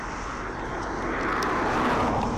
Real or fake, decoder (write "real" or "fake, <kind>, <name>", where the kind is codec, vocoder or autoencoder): real